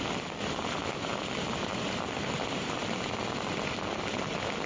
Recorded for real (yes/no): yes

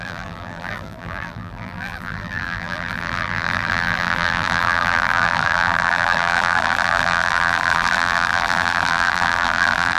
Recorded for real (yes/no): no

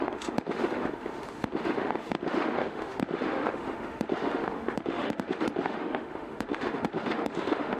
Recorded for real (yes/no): no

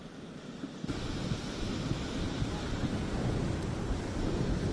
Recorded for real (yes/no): yes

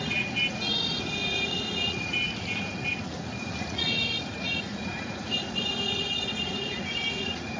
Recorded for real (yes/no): no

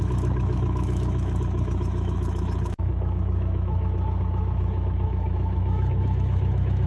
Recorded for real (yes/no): no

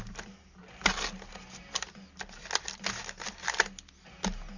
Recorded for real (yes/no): yes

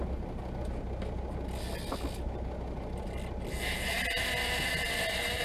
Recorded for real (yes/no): yes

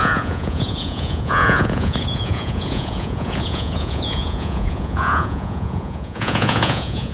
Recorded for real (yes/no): no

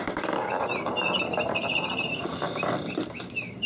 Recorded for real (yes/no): no